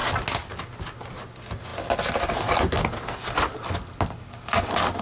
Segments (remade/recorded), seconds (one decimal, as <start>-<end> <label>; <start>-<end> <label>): 0.0-5.0 recorded